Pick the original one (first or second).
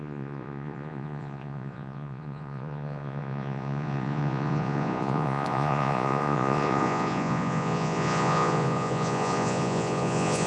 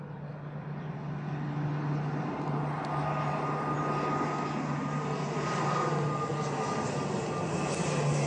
second